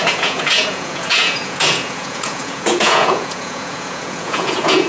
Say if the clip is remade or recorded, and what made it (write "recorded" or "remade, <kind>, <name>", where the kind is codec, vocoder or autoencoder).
remade, vocoder, Vocos